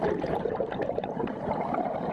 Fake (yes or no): yes